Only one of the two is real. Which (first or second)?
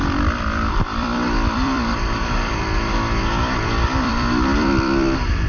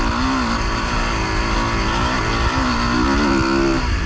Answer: second